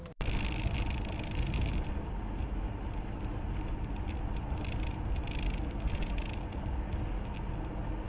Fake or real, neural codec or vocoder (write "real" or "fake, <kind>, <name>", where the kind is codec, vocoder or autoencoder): real